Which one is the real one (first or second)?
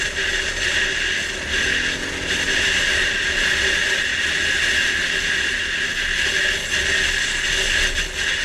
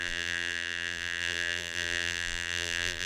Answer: first